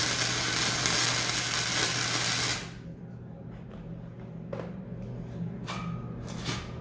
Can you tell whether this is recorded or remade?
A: recorded